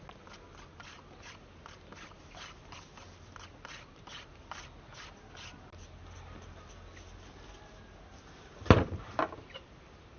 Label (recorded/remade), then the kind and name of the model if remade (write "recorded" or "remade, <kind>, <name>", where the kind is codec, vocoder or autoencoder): recorded